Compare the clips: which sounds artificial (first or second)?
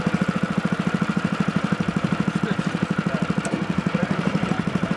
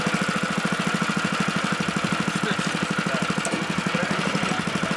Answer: first